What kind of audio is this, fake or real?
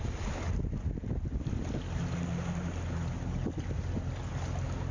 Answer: real